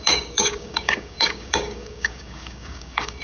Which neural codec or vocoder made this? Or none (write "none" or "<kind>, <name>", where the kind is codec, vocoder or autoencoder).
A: codec, DAC